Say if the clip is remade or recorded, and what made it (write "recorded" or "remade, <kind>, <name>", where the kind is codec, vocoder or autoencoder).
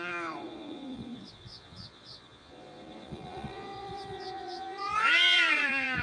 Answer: remade, vocoder, Vocos